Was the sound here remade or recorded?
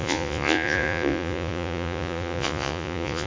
remade